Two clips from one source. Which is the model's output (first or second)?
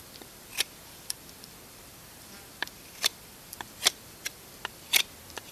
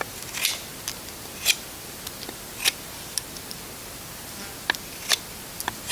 first